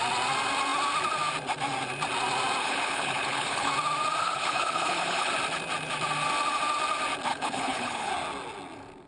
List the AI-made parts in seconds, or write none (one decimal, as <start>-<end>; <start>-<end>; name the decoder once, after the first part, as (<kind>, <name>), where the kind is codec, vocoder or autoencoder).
2.6-3.7 (codec, HILCodec); 4.2-5.3; 7.3-8.1